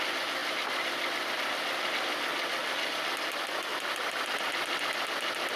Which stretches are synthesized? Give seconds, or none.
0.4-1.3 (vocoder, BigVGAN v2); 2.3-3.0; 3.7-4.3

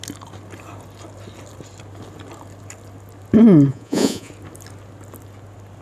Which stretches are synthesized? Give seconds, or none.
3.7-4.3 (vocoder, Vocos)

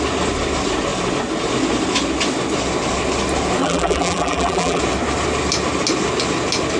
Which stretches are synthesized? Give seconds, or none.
3.6-4.8 (vocoder, BigVGAN v2)